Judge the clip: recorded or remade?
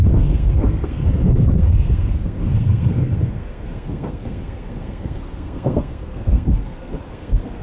remade